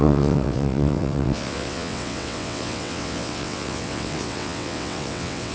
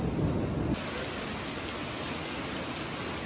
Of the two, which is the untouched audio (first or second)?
second